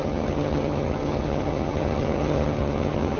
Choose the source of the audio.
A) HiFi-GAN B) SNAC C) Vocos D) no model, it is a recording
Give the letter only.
A